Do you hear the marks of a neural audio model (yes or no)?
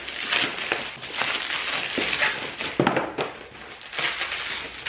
no